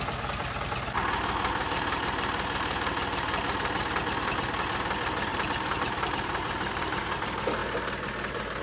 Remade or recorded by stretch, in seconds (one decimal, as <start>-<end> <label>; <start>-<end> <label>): 0.0-1.6 recorded; 1.6-3.7 remade; 3.7-5.3 recorded; 5.3-7.0 remade; 7.0-8.6 recorded